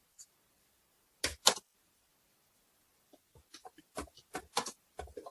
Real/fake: real